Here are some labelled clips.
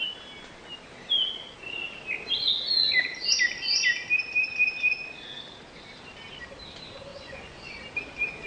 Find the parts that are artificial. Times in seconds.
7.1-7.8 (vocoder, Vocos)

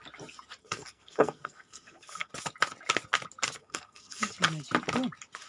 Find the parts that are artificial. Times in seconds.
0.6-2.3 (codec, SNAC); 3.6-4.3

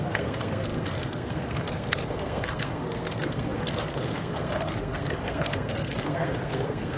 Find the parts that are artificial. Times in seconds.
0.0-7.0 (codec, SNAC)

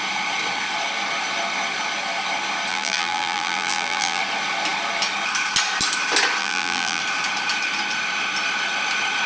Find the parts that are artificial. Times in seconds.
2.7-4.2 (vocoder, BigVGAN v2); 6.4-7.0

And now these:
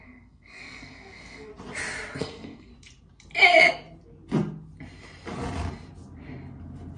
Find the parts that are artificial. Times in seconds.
0.0-1.5 (codec, SNAC); 2.2-2.7

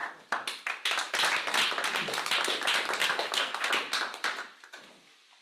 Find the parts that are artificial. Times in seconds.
3.0-3.7 (codec, SNAC)